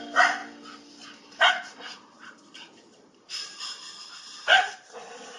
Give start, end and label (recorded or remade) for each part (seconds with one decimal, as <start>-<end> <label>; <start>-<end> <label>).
0.0-0.4 remade; 0.4-1.5 recorded; 1.5-5.4 remade